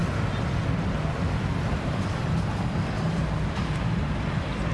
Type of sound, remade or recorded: recorded